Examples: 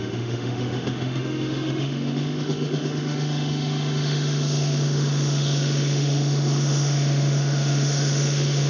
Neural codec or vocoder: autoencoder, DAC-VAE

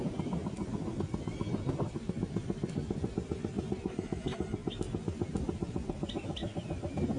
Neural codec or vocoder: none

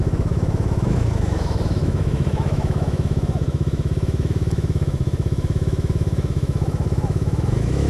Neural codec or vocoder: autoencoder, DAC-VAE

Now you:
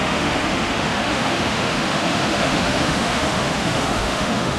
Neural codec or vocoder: autoencoder, DAC-VAE